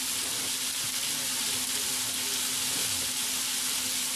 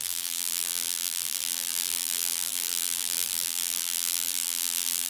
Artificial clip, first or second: second